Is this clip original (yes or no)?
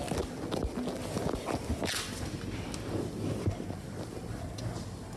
yes